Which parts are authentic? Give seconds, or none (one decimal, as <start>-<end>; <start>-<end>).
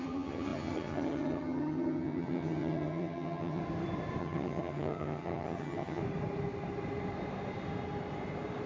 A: 3.6-4.2; 6.0-8.7